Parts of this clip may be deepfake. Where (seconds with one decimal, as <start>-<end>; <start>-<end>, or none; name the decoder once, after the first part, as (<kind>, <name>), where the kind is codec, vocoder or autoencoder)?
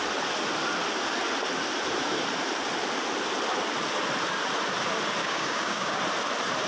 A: 5.2-6.0 (codec, DAC)